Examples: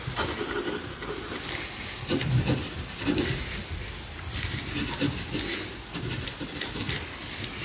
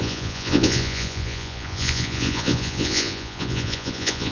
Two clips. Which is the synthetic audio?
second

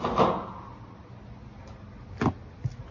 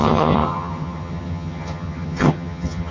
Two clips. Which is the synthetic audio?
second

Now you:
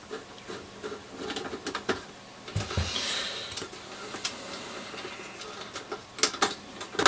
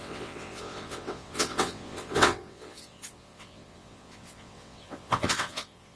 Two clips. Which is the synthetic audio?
second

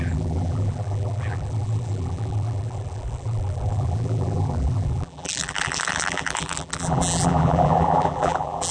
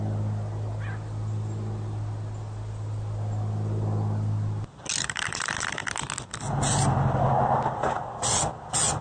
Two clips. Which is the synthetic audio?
first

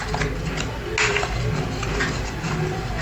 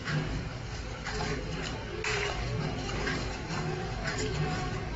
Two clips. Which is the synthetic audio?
second